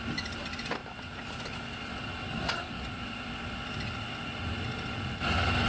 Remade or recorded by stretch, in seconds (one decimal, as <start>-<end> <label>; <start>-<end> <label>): 0.0-5.7 recorded